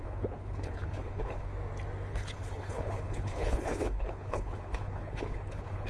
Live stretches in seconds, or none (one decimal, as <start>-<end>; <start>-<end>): 1.5-2.1